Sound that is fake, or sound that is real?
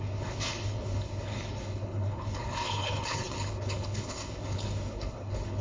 fake